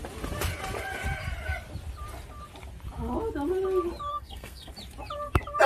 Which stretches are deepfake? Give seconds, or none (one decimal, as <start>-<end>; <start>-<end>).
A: 4.1-4.7